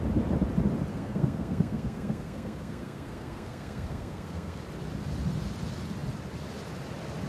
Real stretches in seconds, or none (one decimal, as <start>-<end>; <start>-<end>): 0.0-0.9; 4.6-7.3